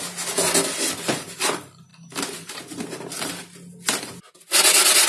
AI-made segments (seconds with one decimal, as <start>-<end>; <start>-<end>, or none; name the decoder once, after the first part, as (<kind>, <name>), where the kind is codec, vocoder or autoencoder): none